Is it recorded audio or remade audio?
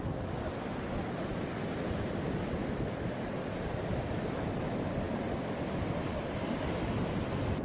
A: recorded